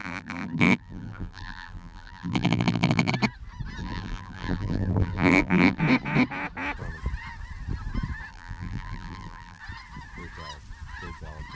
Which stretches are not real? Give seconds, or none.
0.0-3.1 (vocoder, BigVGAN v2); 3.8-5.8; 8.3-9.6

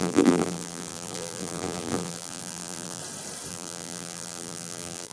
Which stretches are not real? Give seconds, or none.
0.0-3.0 (vocoder, BigVGAN v2); 3.5-5.1